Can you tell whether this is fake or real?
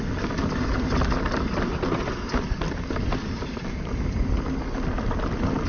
real